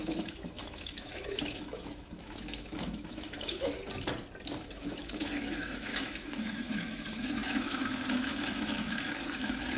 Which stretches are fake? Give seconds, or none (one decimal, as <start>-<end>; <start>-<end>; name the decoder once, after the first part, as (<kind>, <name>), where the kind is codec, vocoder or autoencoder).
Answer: 0.0-3.8 (autoencoder, DAC-VAE); 4.6-9.8